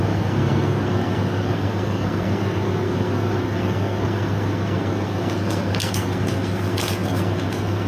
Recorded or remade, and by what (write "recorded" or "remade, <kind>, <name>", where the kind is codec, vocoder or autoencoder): remade, codec, SNAC